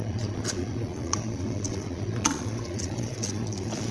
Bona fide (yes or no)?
no